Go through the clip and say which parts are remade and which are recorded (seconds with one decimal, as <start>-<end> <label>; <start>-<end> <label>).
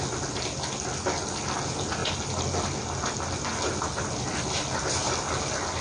0.0-5.8 recorded